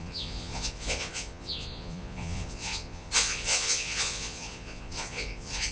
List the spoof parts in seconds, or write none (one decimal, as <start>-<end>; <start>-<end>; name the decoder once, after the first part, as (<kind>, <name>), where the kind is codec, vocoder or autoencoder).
0.0-5.7 (vocoder, Vocos)